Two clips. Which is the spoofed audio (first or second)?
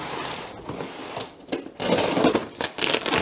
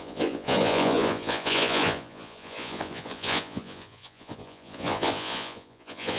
second